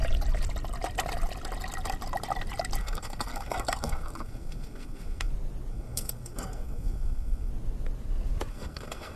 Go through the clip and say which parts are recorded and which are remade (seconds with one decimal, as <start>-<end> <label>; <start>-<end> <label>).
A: 0.0-2.8 recorded; 2.8-5.3 remade; 5.3-5.7 recorded; 5.7-7.5 remade; 7.5-8.5 recorded; 8.5-9.2 remade